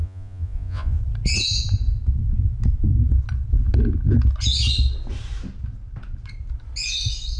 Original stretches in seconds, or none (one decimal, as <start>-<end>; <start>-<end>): 1.0-7.4